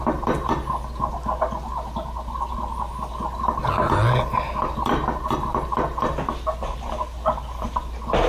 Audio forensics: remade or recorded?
recorded